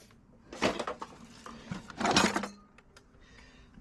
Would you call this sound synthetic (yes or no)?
no